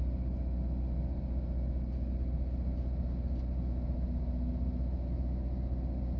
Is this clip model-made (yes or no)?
no